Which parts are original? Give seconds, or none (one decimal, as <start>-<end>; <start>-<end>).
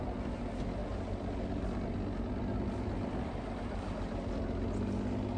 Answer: 0.0-5.4